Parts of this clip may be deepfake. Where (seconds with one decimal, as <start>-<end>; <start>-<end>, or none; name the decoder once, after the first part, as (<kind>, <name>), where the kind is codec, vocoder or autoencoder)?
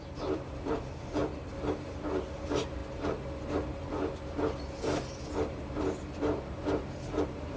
0.0-1.2 (vocoder, BigVGAN v2); 1.9-2.8; 6.6-7.6